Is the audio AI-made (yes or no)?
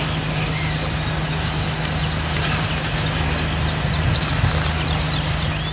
no